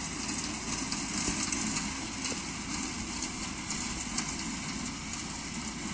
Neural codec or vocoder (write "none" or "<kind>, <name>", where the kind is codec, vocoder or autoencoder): none